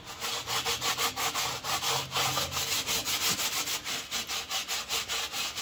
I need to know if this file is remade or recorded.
recorded